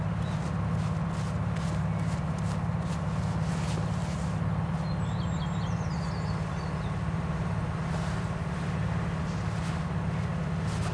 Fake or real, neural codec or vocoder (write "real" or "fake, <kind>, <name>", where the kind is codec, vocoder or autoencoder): real